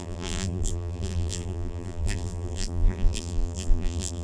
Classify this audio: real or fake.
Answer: fake